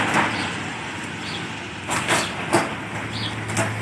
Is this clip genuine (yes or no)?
yes